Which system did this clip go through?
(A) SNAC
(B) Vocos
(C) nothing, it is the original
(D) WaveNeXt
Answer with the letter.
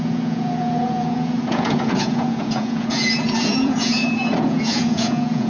B